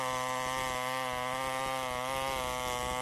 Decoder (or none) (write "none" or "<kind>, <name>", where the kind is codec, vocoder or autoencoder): none